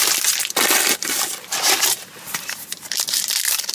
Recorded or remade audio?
remade